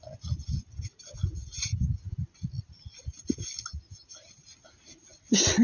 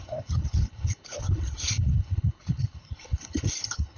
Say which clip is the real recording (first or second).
first